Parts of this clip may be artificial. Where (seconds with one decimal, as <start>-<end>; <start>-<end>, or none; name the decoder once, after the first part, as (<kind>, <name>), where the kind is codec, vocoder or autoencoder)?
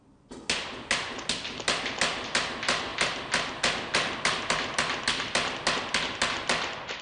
none